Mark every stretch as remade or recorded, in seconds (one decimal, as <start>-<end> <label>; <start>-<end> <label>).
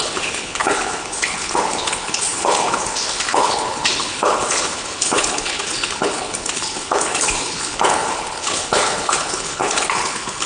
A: 0.0-10.5 remade